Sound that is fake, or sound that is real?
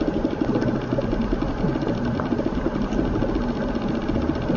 real